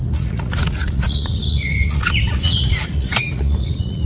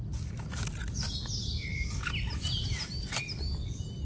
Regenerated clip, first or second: first